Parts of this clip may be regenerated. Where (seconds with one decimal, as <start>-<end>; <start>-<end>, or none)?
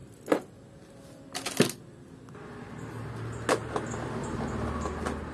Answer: none